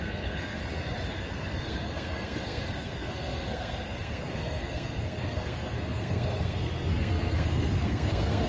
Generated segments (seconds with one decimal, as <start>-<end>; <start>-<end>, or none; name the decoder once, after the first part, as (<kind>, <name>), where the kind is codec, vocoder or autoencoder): 0.0-0.6 (codec, SNAC); 1.1-8.5